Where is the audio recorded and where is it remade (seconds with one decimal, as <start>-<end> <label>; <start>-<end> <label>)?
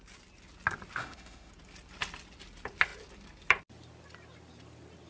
0.0-1.0 recorded; 1.0-1.5 remade; 1.5-5.1 recorded